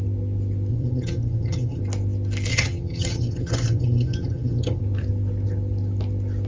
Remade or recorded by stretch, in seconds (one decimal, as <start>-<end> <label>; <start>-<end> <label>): 0.0-0.7 recorded; 0.7-1.8 remade; 1.8-2.5 recorded; 2.5-4.8 remade; 4.8-6.5 recorded